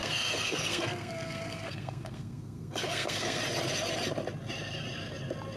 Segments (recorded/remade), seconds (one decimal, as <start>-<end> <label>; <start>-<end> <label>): 0.0-3.4 remade; 3.4-5.6 recorded